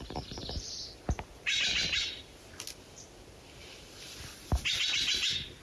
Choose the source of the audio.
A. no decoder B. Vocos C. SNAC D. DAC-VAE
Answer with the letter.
A